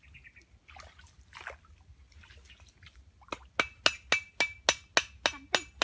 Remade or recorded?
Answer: recorded